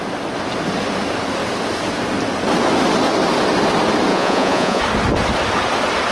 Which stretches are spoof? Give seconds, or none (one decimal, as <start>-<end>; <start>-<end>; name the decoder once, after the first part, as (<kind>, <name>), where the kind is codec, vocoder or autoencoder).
4.1-4.8 (vocoder, Vocos)

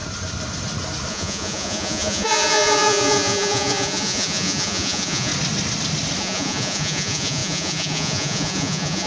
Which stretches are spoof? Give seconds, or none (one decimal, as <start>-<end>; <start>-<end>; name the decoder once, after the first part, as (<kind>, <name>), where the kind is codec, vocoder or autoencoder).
1.1-5.3 (vocoder, Vocos); 6.2-9.1

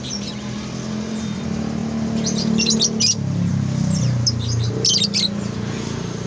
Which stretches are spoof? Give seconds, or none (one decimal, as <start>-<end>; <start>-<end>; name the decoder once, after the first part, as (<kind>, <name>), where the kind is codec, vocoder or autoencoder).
none

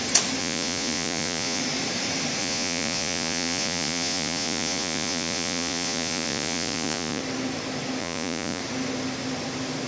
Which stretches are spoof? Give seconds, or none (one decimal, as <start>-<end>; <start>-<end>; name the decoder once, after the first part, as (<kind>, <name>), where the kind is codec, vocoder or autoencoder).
0.4-1.6 (vocoder, Vocos); 2.4-7.2; 8.0-8.6

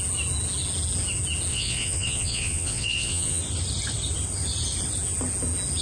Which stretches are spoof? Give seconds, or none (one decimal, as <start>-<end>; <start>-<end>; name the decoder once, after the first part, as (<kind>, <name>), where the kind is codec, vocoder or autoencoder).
1.5-3.4 (vocoder, Vocos)

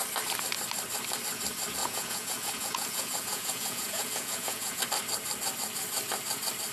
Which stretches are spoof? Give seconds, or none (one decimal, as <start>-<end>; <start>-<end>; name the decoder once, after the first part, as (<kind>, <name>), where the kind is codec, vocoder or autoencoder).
1.8-4.8 (vocoder, Vocos)

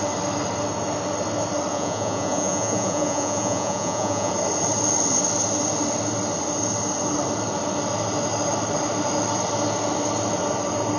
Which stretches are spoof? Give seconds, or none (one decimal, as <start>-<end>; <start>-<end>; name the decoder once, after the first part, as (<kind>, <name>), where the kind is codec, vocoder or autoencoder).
1.7-4.3 (vocoder, Vocos)